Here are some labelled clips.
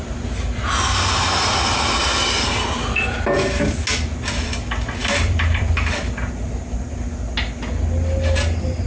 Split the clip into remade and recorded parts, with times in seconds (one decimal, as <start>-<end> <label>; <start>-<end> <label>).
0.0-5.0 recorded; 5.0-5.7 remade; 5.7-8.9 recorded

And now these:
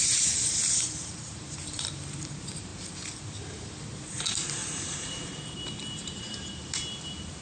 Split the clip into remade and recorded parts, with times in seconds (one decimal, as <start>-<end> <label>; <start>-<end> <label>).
0.0-2.7 remade; 2.7-3.9 recorded; 3.9-7.4 remade

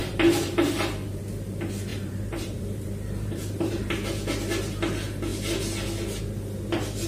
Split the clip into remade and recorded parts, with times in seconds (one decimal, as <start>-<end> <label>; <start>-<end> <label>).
0.0-1.2 remade; 1.2-1.9 recorded; 1.9-3.7 remade; 3.7-7.1 recorded